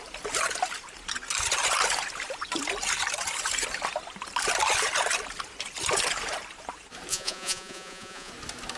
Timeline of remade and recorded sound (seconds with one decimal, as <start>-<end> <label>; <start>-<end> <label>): 0.0-7.1 recorded; 7.1-8.3 remade; 8.3-8.8 recorded